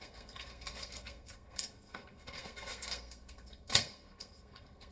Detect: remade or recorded remade